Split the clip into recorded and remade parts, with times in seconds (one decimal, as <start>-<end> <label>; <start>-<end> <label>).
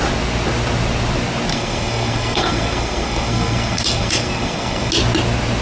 0.0-1.5 recorded; 1.5-4.9 remade; 4.9-5.6 recorded